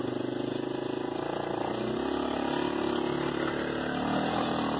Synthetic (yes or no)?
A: no